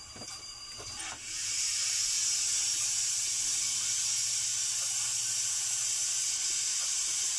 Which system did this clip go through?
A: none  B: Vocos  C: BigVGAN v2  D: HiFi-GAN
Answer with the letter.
A